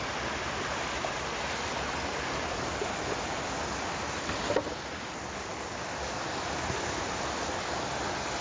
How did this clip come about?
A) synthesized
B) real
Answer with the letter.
B